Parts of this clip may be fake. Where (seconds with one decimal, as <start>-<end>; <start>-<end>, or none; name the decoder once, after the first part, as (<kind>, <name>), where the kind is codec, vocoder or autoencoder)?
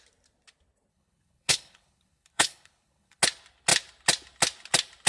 0.9-3.2 (codec, HILCodec)